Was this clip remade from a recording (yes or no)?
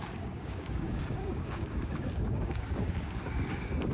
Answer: yes